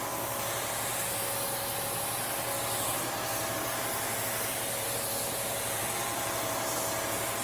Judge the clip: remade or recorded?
recorded